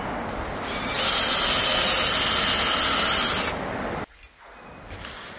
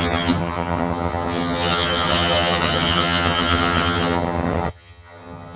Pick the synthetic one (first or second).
second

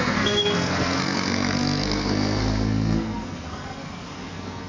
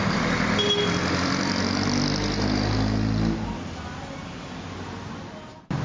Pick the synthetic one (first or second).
first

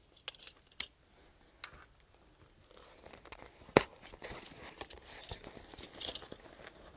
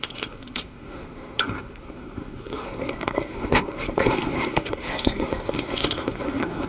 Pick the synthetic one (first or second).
second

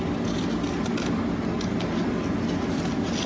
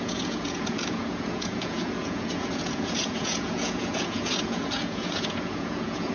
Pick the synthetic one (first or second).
second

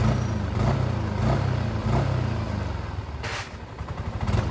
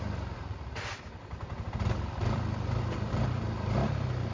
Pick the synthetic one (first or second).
second